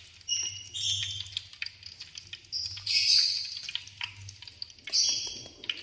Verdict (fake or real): real